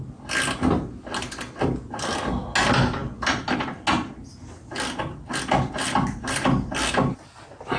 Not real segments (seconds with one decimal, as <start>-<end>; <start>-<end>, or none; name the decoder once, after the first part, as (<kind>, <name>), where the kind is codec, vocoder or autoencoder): none

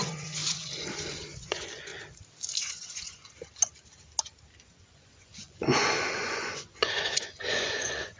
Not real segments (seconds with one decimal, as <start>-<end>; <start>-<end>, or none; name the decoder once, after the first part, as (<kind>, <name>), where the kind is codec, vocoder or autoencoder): 0.0-1.9 (vocoder, Vocos); 2.6-3.2; 4.6-8.2

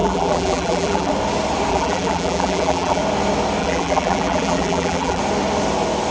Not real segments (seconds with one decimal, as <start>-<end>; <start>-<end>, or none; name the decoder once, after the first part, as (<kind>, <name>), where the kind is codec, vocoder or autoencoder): 0.0-1.1 (vocoder, BigVGAN v2); 1.7-3.0; 3.6-5.2

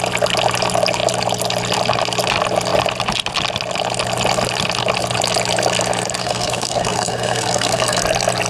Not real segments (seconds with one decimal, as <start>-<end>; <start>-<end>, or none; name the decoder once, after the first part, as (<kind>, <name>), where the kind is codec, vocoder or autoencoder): 6.2-8.0 (codec, SNAC)

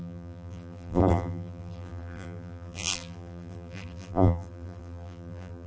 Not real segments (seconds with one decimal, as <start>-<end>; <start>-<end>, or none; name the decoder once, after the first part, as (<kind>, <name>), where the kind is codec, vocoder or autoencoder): 0.0-5.7 (vocoder, BigVGAN v2)

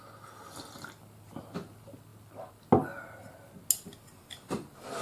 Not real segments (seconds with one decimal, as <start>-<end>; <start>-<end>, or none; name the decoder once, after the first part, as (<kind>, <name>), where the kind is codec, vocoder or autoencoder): none

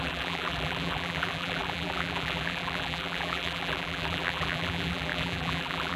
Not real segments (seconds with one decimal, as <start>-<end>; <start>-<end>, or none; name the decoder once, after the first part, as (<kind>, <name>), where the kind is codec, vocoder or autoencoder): 0.0-6.0 (vocoder, BigVGAN v2)

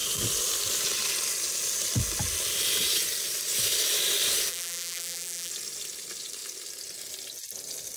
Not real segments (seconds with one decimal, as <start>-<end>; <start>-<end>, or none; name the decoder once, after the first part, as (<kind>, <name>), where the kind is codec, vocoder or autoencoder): 4.5-5.5 (vocoder, BigVGAN v2)